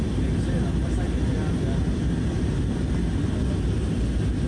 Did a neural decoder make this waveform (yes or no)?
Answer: no